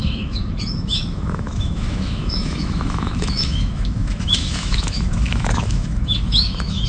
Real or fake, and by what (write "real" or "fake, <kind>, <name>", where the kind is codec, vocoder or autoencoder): fake, autoencoder, DAC-VAE